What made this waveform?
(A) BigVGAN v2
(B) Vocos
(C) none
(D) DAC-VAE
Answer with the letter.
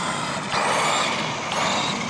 A